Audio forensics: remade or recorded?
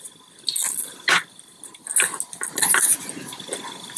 recorded